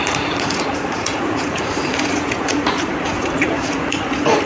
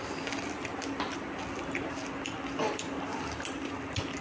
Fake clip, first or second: first